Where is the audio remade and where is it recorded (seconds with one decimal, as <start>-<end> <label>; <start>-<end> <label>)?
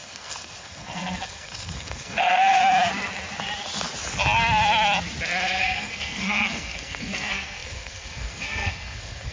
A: 0.0-2.6 remade; 2.6-5.6 recorded; 5.6-9.3 remade